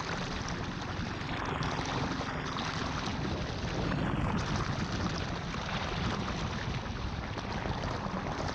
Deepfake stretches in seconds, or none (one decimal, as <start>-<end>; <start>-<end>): none